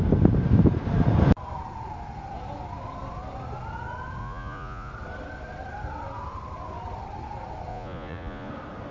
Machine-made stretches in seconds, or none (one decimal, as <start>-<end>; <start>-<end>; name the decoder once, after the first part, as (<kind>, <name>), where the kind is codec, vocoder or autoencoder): 4.2-4.9 (vocoder, Vocos); 7.7-8.5